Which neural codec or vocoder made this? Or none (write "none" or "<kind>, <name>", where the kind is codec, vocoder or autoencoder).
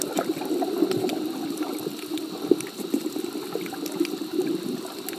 none